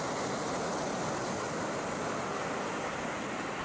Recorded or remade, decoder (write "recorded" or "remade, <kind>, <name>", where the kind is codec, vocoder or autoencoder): recorded